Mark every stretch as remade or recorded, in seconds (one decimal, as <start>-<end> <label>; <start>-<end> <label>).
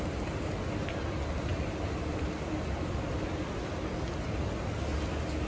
0.0-1.5 recorded; 1.5-3.7 remade; 3.7-5.5 recorded